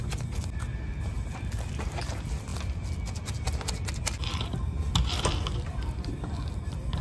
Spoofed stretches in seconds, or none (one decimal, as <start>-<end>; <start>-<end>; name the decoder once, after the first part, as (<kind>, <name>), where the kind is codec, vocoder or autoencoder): none